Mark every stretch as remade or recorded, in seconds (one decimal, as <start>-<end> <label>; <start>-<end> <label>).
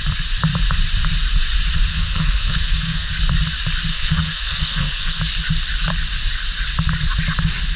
0.0-1.9 recorded; 1.9-3.1 remade; 3.1-3.9 recorded; 3.9-5.2 remade; 5.2-7.8 recorded